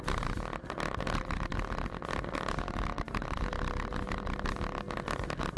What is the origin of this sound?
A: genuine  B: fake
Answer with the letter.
A